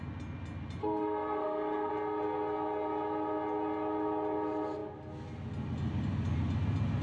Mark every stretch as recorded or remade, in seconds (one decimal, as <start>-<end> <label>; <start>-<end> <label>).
0.0-0.8 recorded; 0.8-1.9 remade; 1.9-7.0 recorded